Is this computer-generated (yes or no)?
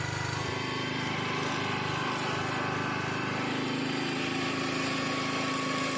no